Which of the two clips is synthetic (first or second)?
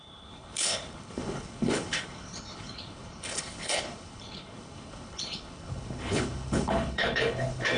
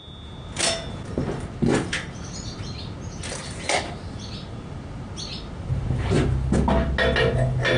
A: first